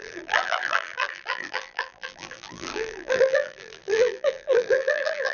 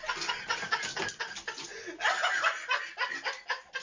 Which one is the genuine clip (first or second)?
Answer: second